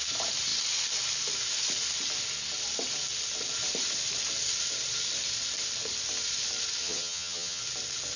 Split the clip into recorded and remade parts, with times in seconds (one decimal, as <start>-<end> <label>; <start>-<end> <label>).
0.0-6.8 recorded; 6.8-7.6 remade; 7.6-8.2 recorded